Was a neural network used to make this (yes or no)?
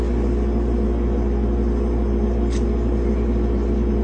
no